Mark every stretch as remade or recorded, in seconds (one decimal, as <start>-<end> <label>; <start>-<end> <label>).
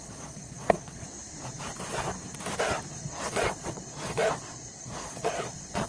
0.0-1.0 remade; 1.0-2.9 recorded; 2.9-5.9 remade